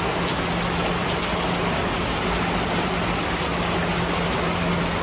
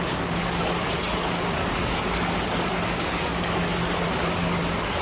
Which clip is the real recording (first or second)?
first